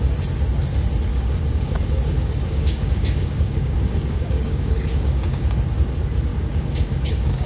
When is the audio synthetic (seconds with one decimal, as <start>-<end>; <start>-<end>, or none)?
1.1-5.6; 6.3-7.5